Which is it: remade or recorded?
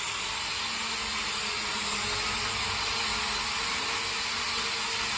recorded